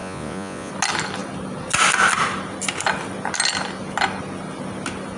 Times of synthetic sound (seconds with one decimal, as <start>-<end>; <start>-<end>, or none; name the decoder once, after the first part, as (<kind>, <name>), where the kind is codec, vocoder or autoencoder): 0.0-0.7 (vocoder, Vocos)